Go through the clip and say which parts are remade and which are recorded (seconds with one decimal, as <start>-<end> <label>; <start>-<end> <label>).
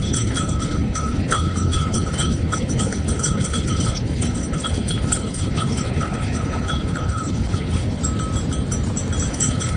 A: 0.0-8.0 remade; 8.0-9.3 recorded; 9.3-9.8 remade